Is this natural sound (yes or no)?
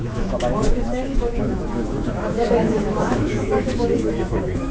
no